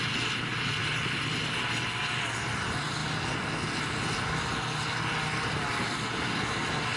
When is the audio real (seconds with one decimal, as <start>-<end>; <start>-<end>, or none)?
0.0-7.0